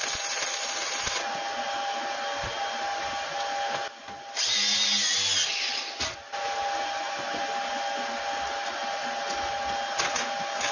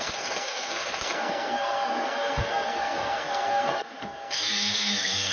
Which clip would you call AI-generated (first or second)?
second